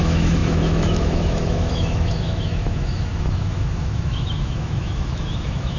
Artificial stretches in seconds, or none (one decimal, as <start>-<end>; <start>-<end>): 0.0-5.8